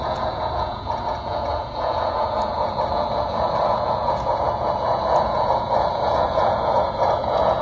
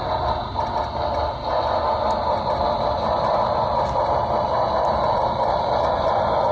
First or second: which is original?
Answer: second